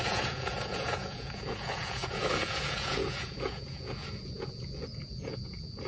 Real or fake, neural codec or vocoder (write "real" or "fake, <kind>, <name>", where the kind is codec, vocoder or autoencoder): fake, vocoder, Vocos